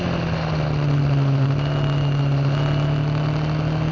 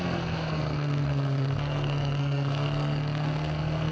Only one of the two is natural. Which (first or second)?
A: first